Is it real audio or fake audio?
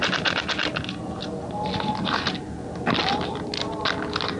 real